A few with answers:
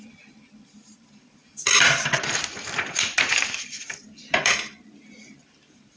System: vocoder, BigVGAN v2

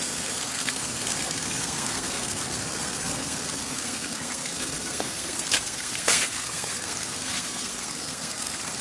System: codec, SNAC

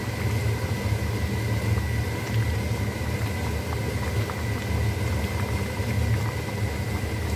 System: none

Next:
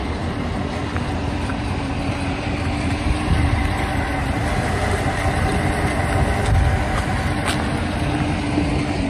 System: none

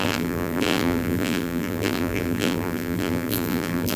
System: vocoder, BigVGAN v2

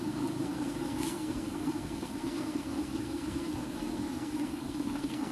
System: codec, SNAC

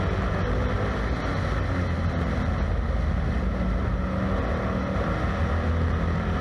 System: none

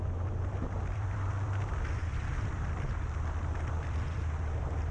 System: vocoder, BigVGAN v2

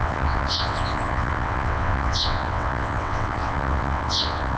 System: vocoder, WaveNeXt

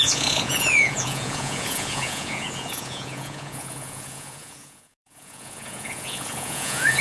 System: vocoder, Vocos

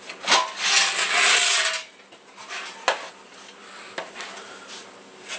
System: none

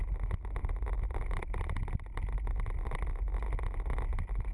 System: none